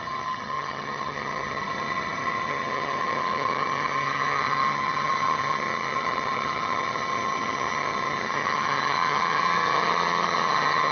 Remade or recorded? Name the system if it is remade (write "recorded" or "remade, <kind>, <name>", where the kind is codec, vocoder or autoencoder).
remade, vocoder, HiFi-GAN